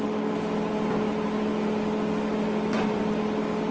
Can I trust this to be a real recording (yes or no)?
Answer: yes